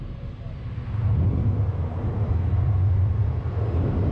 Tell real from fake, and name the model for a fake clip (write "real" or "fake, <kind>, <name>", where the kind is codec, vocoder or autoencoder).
real